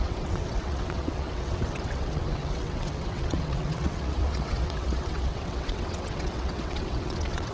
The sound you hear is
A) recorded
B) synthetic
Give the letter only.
B